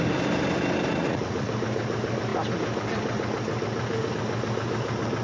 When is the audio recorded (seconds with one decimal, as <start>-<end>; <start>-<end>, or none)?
0.0-1.0; 1.5-5.2